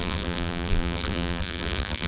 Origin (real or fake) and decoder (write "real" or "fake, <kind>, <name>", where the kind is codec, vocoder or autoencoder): fake, vocoder, BigVGAN v2